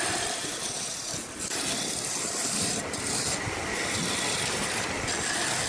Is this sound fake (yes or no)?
no